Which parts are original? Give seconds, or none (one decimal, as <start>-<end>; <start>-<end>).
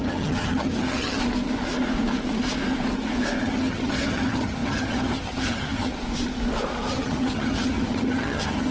1.2-3.4; 5.9-6.9